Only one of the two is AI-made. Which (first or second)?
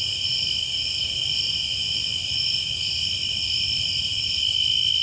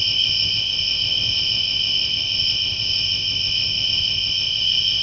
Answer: second